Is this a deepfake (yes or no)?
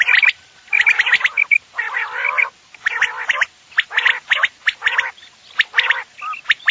no